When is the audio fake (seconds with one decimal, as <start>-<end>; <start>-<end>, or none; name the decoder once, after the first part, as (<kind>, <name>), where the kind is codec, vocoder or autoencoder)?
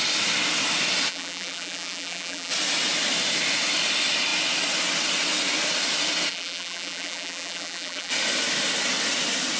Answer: 1.1-2.5 (vocoder, BigVGAN v2); 6.3-8.1